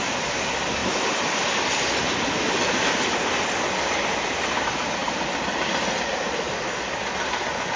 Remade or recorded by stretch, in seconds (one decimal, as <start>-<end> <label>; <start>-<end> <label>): 0.0-7.8 recorded